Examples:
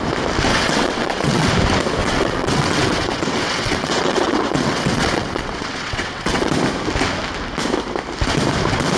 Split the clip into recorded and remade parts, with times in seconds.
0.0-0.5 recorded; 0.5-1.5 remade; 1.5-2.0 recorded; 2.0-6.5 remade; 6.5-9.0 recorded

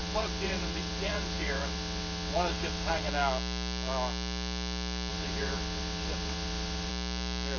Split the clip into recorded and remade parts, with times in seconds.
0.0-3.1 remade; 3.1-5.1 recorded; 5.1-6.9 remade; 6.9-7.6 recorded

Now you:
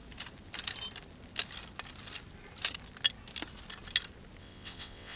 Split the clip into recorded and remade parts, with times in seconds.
0.0-4.4 recorded; 4.4-5.2 remade

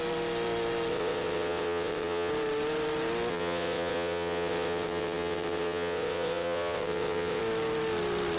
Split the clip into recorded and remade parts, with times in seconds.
0.0-0.9 recorded; 0.9-2.3 remade; 2.3-3.3 recorded; 3.3-7.4 remade; 7.4-8.4 recorded

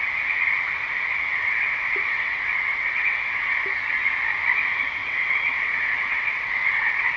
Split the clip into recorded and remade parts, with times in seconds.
0.0-1.1 recorded; 1.1-3.5 remade; 3.5-5.0 recorded; 5.0-7.2 remade